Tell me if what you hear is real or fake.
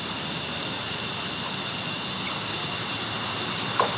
real